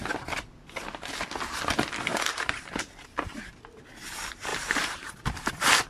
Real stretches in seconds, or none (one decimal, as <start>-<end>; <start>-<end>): 0.0-2.1; 2.8-4.5; 5.5-5.9